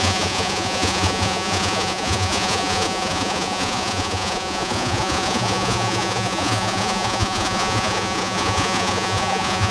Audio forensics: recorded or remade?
remade